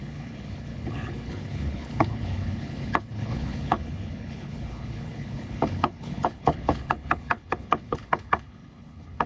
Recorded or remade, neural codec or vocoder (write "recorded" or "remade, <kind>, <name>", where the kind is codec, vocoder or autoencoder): remade, codec, HILCodec